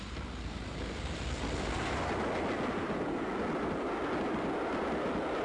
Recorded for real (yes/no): yes